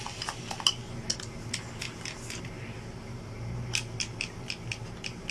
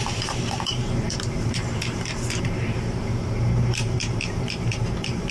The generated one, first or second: second